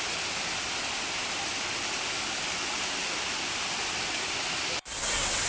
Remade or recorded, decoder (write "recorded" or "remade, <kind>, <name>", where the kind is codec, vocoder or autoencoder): recorded